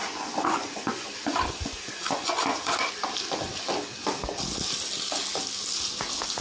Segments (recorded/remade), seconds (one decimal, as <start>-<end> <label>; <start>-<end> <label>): 0.0-2.9 remade; 2.9-6.4 recorded